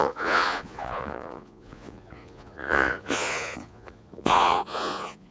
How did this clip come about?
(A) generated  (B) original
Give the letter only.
A